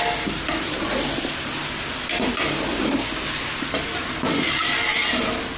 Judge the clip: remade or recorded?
recorded